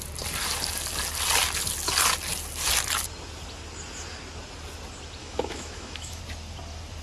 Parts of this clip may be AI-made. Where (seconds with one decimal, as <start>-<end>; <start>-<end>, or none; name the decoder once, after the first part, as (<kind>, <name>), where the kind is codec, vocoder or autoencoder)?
5.2-6.2 (autoencoder, DAC-VAE)